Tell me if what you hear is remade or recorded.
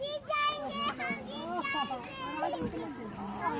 recorded